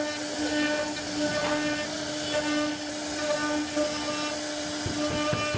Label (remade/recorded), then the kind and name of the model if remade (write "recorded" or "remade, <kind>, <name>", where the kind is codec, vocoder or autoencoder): recorded